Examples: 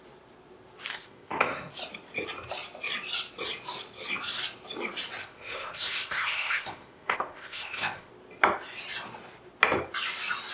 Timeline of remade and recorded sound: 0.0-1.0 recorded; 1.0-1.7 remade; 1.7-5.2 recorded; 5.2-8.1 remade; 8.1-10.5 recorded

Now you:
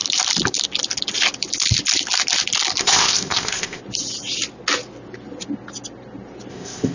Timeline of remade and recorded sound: 0.0-2.8 recorded; 2.8-3.8 remade; 3.8-6.5 recorded; 6.5-6.9 remade

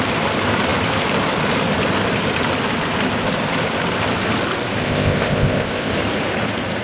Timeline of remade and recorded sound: 0.0-4.8 recorded; 4.8-5.9 remade; 5.9-6.8 recorded

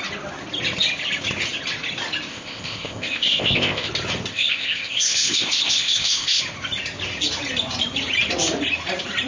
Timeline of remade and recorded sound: 0.0-2.3 recorded; 2.3-3.9 remade; 3.9-4.3 recorded; 4.3-6.4 remade; 6.4-9.3 recorded

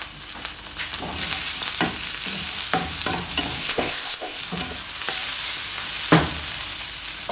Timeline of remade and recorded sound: 0.0-3.6 recorded; 3.6-4.4 remade; 4.4-7.3 recorded

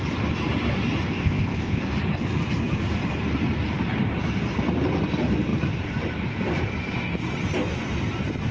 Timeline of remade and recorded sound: 0.0-1.1 recorded; 1.1-1.8 remade; 1.8-8.5 recorded

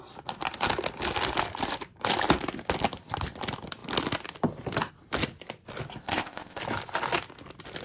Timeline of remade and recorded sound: 0.0-6.0 recorded; 6.0-6.6 remade; 6.6-7.8 recorded